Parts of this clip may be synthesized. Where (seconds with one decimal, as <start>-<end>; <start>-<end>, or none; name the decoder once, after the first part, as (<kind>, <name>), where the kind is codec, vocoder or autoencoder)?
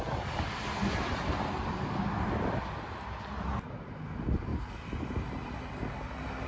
none